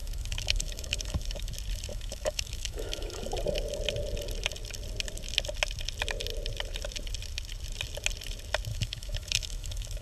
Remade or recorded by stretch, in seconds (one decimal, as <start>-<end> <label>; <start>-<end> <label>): 0.0-1.5 remade; 1.5-1.9 recorded; 1.9-3.2 remade; 3.2-8.7 recorded; 8.7-10.0 remade